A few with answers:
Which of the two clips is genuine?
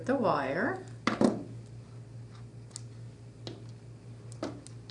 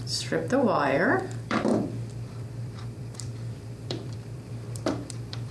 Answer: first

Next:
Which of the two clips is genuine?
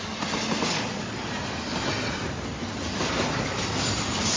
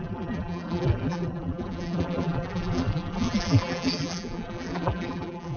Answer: first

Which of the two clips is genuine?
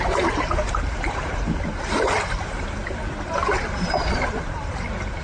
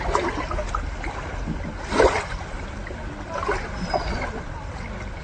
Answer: second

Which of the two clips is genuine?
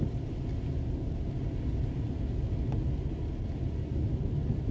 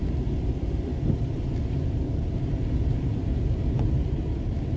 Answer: first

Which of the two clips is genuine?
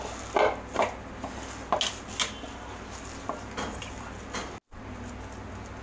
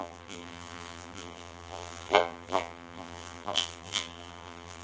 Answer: first